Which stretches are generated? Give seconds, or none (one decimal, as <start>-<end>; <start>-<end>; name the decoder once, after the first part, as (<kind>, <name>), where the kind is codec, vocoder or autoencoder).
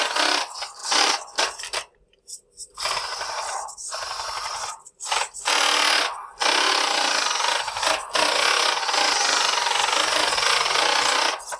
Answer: 0.8-5.5 (vocoder, BigVGAN v2)